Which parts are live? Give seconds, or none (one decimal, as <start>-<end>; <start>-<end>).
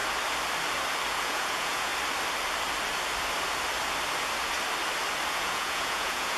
0.0-1.1; 1.9-5.3